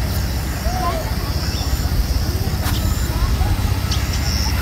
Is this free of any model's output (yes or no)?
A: yes